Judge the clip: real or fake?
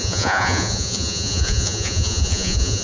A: fake